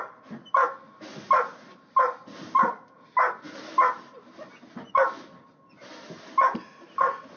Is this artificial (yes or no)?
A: no